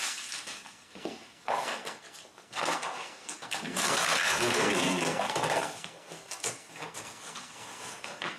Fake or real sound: fake